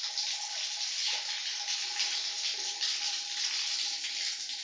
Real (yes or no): yes